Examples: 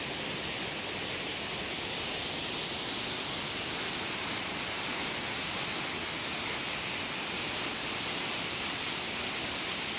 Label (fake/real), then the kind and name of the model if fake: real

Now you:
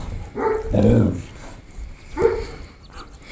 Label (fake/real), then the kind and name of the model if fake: real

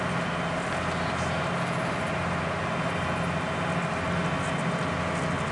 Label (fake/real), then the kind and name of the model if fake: real